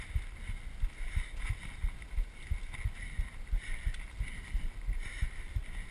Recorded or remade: recorded